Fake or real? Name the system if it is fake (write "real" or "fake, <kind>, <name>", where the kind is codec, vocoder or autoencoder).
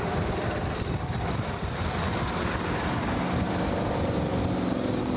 real